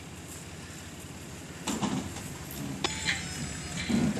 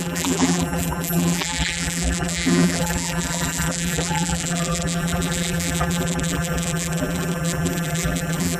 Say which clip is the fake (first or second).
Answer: second